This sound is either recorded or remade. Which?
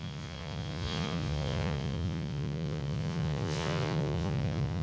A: remade